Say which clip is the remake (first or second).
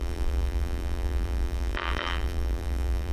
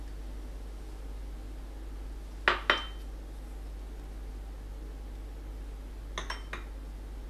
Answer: first